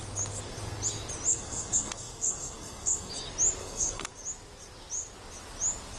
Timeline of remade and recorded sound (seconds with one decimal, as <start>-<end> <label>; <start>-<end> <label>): 0.0-1.3 recorded; 1.3-3.1 remade; 3.1-3.6 recorded; 3.6-4.1 remade; 4.1-6.0 recorded